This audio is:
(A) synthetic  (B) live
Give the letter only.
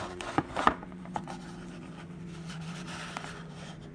A